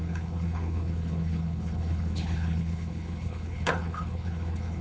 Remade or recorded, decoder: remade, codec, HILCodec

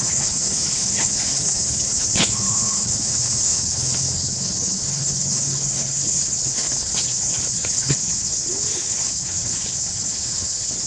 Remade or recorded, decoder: remade, codec, HILCodec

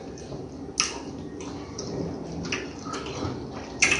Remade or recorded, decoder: recorded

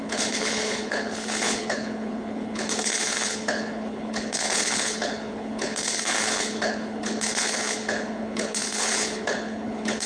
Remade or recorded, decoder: remade, codec, HILCodec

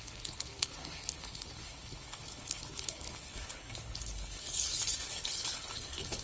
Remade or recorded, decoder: remade, codec, HILCodec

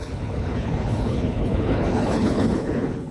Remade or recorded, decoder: remade, codec, HILCodec